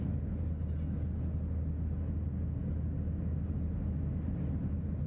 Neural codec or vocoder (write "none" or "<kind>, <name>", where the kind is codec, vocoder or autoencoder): none